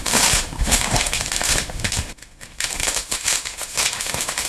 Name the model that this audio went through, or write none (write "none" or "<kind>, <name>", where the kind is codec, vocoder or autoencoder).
autoencoder, DAC-VAE